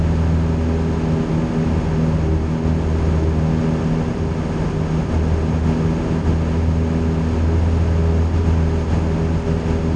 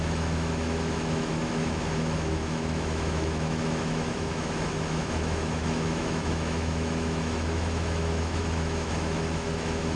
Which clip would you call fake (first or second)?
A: second